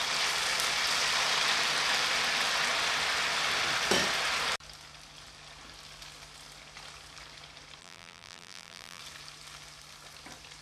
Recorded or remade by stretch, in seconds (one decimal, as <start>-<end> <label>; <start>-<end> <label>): 0.0-7.8 recorded; 7.8-9.0 remade; 9.0-10.6 recorded